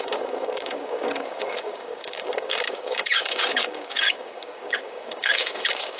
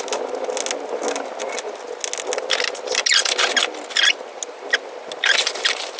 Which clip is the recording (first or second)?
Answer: second